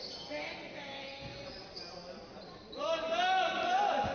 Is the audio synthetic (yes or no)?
no